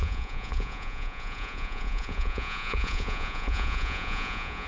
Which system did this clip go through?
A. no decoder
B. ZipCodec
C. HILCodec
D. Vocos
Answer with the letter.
D